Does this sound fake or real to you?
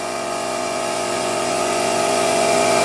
fake